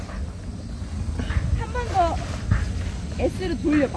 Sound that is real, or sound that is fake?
real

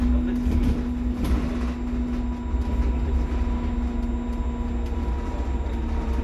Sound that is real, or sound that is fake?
real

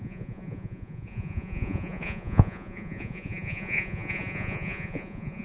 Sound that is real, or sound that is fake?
fake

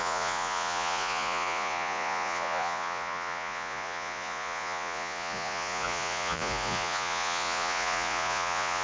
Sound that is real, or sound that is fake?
fake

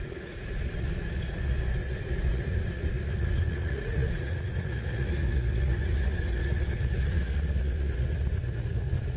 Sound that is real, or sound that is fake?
fake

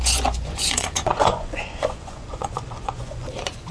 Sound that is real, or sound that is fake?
fake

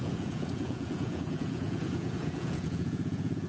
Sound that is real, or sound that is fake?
fake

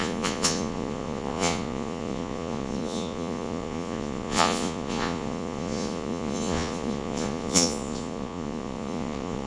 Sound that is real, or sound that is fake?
fake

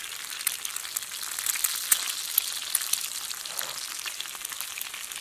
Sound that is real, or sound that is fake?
real